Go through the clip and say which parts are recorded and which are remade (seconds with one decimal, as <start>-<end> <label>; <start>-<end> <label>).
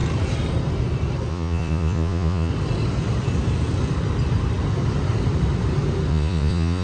0.0-1.3 recorded; 1.3-2.5 remade; 2.5-6.1 recorded; 6.1-6.8 remade